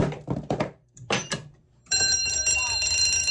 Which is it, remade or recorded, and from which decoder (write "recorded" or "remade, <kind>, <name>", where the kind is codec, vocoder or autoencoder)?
remade, vocoder, BigVGAN v2